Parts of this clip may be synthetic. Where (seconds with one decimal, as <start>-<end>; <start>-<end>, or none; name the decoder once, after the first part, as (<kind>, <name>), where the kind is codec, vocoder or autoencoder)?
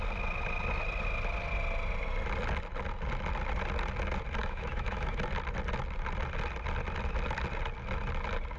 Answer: 4.4-5.2 (autoencoder, DAC-VAE)